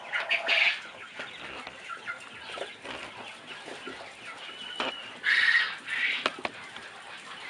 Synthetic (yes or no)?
no